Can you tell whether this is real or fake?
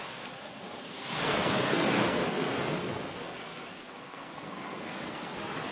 fake